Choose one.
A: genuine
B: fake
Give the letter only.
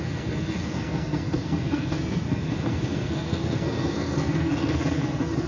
B